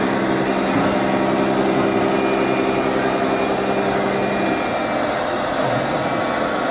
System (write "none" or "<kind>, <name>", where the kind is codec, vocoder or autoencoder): none